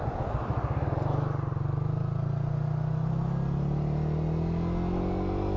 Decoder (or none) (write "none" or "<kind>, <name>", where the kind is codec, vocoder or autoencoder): none